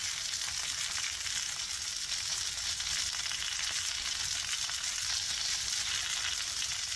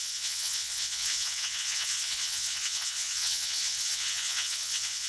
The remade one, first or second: second